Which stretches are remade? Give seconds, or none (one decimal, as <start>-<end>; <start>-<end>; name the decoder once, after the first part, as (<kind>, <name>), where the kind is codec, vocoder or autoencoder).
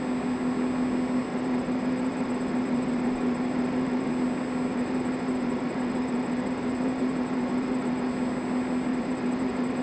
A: 1.3-4.1 (vocoder, BigVGAN v2); 4.7-8.1; 8.9-9.8